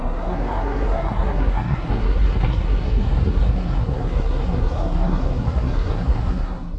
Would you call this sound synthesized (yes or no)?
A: yes